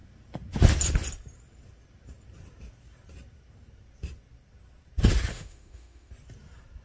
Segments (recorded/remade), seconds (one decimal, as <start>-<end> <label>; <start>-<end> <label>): 0.0-5.3 recorded; 5.3-6.1 remade; 6.1-6.8 recorded